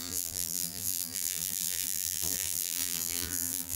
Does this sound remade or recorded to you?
remade